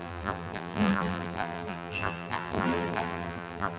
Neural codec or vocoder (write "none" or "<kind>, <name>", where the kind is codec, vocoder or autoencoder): vocoder, BigVGAN v2